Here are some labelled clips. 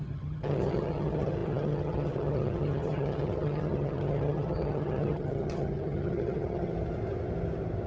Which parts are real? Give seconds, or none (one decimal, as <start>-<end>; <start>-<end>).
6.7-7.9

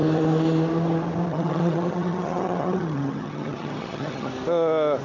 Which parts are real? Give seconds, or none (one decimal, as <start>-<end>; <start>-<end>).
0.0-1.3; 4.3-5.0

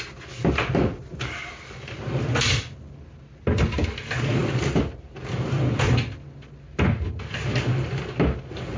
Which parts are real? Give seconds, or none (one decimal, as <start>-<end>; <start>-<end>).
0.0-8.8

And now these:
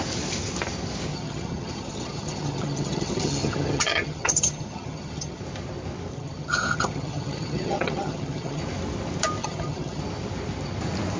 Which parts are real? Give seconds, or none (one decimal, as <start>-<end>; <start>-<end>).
0.0-1.1; 5.4-6.1; 8.6-9.4; 10.0-11.2